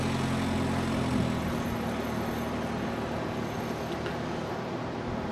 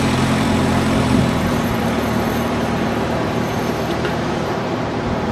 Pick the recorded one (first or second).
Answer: first